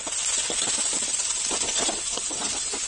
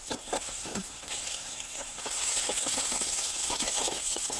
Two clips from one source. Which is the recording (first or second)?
first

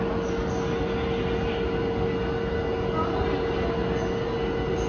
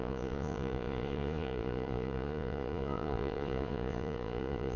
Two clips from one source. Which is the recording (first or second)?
first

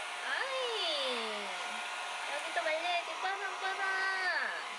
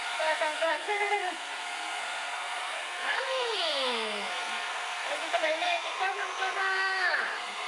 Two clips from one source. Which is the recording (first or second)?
first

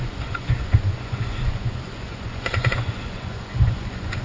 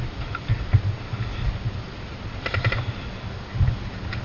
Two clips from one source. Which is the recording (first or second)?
second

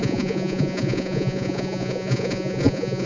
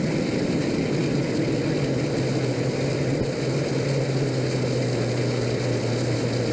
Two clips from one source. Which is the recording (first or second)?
second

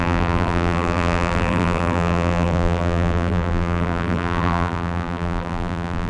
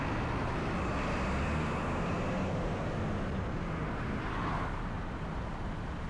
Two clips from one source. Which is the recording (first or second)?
second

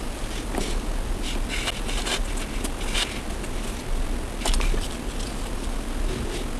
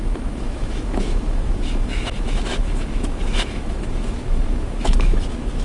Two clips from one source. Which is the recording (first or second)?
first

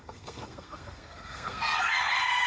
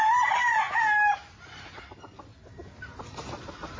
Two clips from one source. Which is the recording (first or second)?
second